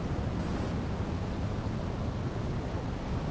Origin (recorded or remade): recorded